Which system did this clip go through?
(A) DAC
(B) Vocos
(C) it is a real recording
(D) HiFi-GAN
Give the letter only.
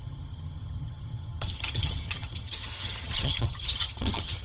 D